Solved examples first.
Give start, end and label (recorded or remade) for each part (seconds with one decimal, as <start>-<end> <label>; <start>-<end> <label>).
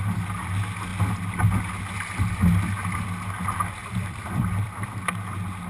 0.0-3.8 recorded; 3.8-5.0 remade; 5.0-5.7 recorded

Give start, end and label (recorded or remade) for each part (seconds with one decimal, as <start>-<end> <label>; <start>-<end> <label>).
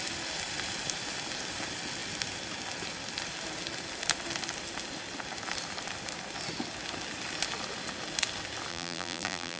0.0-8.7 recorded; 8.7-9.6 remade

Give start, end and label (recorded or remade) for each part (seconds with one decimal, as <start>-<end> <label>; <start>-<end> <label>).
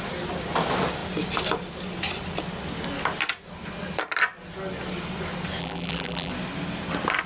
0.0-5.6 recorded; 5.6-6.3 remade; 6.3-7.3 recorded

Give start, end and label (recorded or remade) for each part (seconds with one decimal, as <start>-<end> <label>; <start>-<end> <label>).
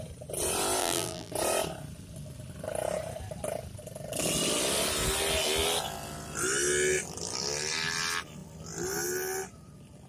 0.0-0.8 recorded; 0.8-1.3 remade; 1.3-10.1 recorded